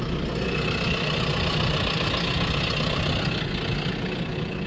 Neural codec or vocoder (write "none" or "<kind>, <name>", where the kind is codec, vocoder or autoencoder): none